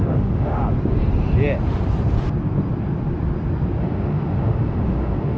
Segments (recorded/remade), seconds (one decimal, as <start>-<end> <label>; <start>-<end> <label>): 0.0-0.6 remade; 0.6-3.8 recorded; 3.8-5.4 remade